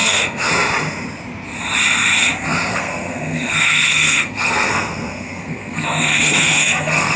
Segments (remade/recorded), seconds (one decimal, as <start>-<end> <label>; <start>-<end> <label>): 0.0-0.5 remade; 0.5-2.7 recorded; 2.7-7.2 remade